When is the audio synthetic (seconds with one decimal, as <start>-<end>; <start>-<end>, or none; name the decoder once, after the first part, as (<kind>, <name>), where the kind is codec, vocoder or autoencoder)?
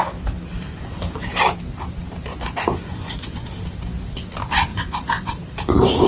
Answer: 0.7-1.2 (vocoder, Vocos); 2.3-3.5; 4.7-5.3